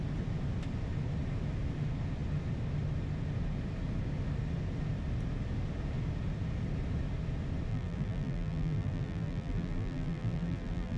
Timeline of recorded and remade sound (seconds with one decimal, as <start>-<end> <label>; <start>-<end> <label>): 0.0-7.7 recorded; 7.7-11.0 remade